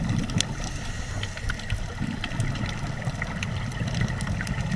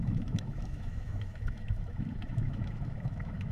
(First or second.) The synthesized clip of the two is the second